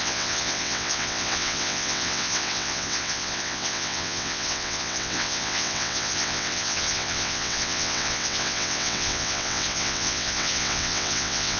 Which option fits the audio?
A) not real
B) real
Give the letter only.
A